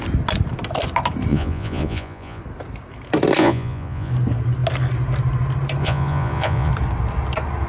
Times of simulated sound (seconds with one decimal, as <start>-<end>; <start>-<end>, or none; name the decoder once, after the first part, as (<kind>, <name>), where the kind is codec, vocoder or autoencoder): 1.3-2.4 (vocoder, Vocos); 3.4-4.1; 5.8-6.7